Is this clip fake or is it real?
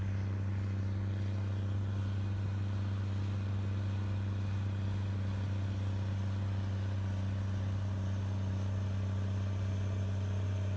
real